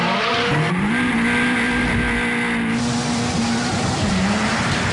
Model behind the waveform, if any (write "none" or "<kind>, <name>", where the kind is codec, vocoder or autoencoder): none